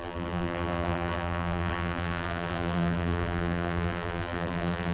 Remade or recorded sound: remade